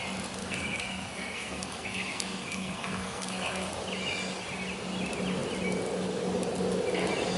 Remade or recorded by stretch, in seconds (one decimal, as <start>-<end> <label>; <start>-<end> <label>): 0.0-0.4 recorded; 0.4-3.7 remade; 3.7-7.4 recorded